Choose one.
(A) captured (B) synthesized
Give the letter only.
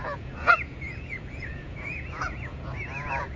B